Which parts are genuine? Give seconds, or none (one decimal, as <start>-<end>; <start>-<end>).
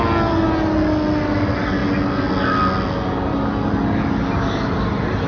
0.0-5.3